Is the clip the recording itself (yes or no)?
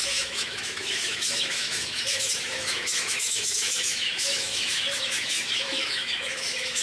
no